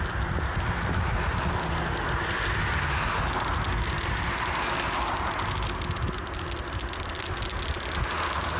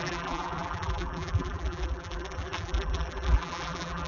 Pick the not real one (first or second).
second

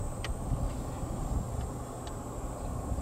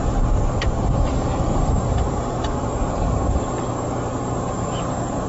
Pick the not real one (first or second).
second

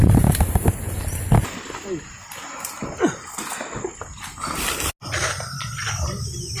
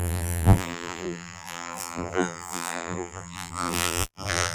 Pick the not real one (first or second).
second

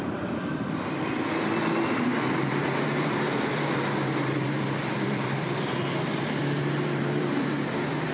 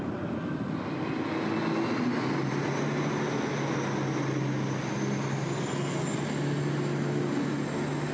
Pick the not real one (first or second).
first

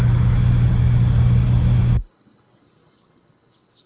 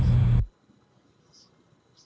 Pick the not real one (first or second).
second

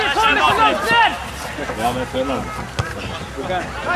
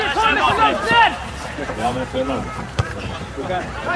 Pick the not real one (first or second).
second